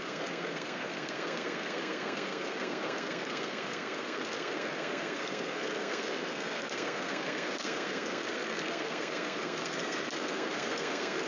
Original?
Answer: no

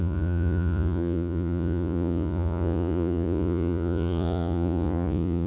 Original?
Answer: no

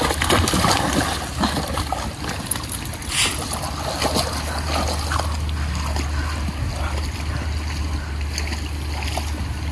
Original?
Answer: yes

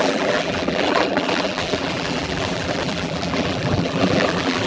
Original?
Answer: no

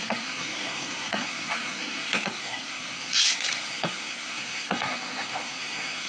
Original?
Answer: no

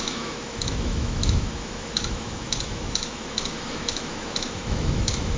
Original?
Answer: no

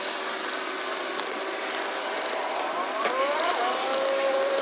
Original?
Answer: yes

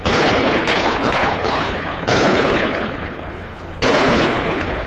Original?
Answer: no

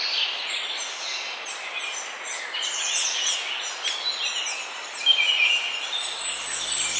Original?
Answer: yes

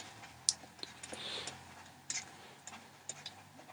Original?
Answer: yes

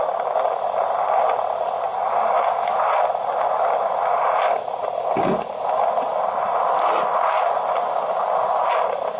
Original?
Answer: yes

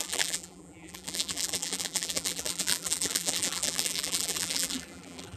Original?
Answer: no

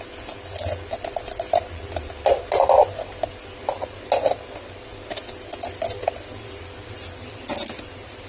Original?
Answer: yes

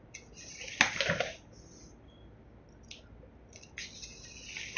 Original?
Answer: yes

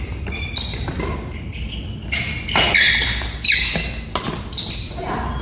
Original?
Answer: yes